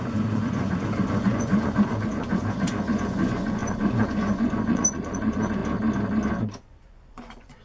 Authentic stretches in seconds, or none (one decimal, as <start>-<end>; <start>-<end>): 5.6-6.4